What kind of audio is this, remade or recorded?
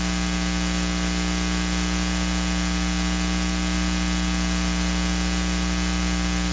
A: recorded